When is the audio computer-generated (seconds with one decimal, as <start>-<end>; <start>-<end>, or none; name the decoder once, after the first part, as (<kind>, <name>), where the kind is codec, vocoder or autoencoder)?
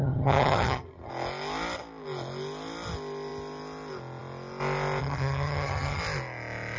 0.0-1.1 (vocoder, HiFi-GAN); 5.0-6.0